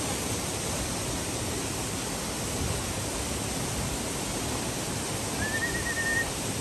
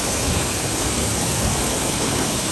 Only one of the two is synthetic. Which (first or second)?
second